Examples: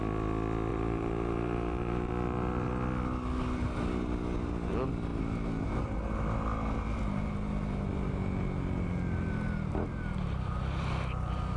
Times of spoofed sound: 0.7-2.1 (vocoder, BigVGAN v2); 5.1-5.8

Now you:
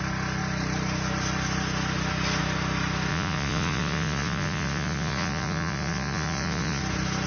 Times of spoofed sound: 3.1-6.8 (vocoder, Vocos)